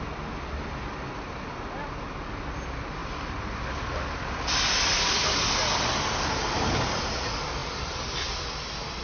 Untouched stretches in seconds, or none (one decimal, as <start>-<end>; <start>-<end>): 0.0-9.0